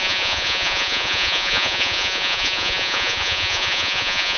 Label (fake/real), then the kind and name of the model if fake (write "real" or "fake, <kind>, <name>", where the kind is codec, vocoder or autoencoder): fake, vocoder, Vocos